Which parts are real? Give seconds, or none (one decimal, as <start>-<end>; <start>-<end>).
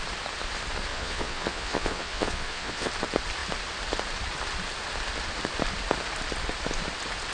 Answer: 0.0-0.9; 2.9-7.3